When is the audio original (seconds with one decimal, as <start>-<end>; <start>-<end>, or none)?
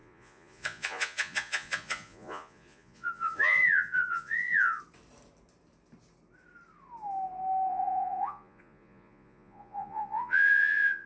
4.8-7.7